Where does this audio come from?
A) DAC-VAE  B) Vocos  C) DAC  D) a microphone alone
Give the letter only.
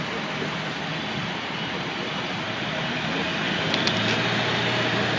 D